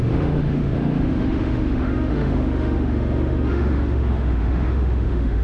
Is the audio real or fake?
fake